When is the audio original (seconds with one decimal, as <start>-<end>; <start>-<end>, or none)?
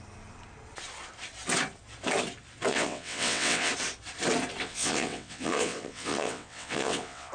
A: 0.0-2.7; 3.7-4.6